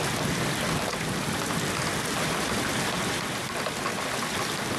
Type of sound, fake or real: real